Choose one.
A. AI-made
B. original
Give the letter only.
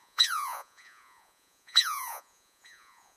A